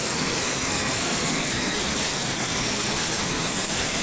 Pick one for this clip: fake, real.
fake